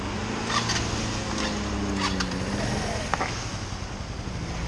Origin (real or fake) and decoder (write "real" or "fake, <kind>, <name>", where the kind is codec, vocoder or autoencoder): real